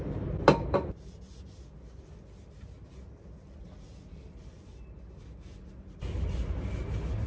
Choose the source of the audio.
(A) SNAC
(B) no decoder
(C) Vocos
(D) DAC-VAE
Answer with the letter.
B